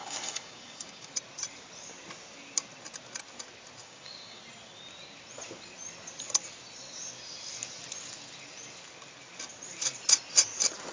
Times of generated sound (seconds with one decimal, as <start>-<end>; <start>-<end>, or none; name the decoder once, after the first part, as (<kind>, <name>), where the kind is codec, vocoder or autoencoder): 0.0-1.1 (codec, DAC); 3.8-4.4